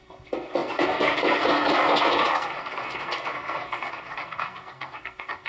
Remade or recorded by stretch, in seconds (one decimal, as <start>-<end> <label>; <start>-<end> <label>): 0.0-5.5 remade